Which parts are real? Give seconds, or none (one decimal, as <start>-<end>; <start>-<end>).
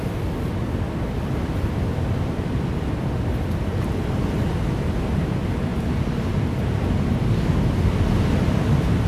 0.0-9.1